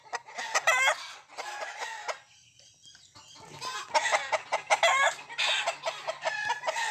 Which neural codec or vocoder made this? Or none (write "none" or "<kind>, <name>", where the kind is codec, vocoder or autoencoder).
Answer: none